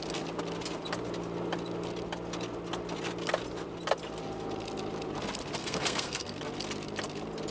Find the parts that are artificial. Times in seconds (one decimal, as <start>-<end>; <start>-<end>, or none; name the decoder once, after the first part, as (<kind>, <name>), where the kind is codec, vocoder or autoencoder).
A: 5.6-6.4 (codec, SNAC)